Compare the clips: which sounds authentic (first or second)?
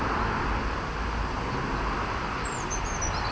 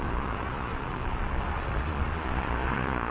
first